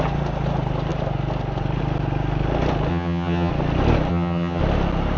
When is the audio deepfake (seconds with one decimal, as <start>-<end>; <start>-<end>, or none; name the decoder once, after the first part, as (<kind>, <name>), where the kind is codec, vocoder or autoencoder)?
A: 2.9-3.5 (vocoder, HiFi-GAN); 4.1-4.6